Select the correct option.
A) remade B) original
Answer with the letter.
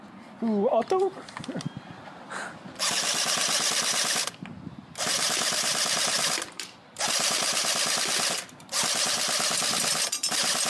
B